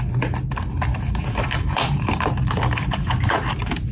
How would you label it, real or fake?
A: real